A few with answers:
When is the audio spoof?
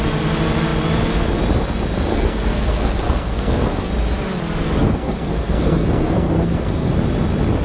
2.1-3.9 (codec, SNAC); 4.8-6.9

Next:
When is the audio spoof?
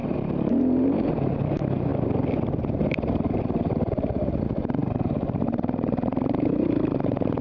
0.0-1.9 (vocoder, BigVGAN v2); 2.6-7.4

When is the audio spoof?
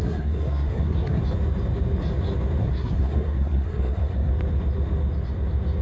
0.0-1.2 (codec, SNAC); 2.6-4.3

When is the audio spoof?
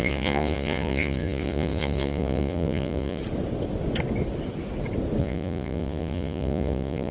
0.0-3.2 (vocoder, Vocos); 5.2-7.1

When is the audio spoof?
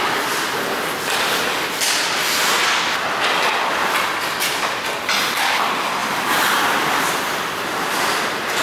6.0-8.2 (vocoder, BigVGAN v2)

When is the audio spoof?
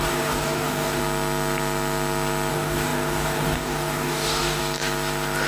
0.0-1.0 (codec, DAC); 2.5-4.6